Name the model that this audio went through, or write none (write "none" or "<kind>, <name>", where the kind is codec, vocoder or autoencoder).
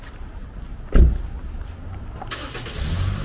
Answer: none